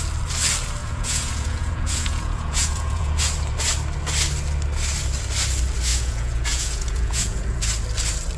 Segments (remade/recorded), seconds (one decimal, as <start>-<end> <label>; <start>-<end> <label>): 0.0-0.8 recorded; 0.8-3.2 remade; 3.2-5.9 recorded; 5.9-7.6 remade; 7.6-8.4 recorded